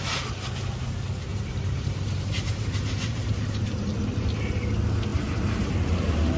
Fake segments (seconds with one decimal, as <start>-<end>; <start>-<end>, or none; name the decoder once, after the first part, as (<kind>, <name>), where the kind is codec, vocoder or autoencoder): 1.3-3.9 (vocoder, BigVGAN v2); 5.1-5.7

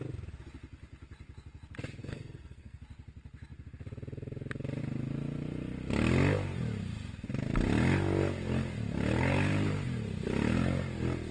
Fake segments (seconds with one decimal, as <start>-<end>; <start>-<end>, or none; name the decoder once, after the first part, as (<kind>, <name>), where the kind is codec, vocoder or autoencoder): 2.0-2.8 (codec, SNAC)

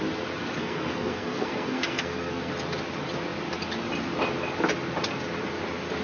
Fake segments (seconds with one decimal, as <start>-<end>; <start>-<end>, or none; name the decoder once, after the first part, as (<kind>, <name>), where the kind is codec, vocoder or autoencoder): 0.6-2.5 (codec, SNAC)

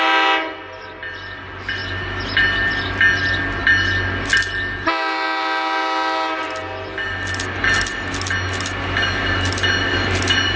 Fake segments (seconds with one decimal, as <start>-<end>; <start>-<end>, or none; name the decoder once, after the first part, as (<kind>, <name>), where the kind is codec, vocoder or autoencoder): none

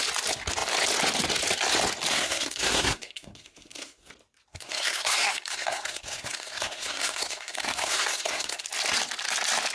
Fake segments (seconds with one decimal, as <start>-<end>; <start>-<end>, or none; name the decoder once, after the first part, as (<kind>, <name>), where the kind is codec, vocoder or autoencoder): 2.1-4.1 (codec, SNAC); 4.5-8.6